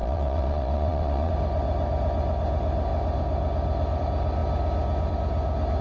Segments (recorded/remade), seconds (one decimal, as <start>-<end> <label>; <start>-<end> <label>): 0.0-1.3 remade; 1.3-5.8 recorded